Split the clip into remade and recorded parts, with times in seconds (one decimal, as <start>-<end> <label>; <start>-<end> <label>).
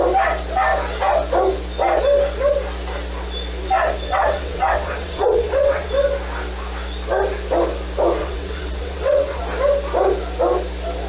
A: 0.0-4.1 recorded; 4.1-5.9 remade; 5.9-8.2 recorded; 8.2-9.4 remade; 9.4-11.1 recorded